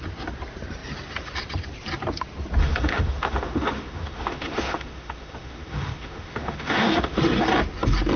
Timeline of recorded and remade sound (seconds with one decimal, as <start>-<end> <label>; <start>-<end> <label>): 0.0-2.6 recorded; 2.6-7.2 remade; 7.2-8.2 recorded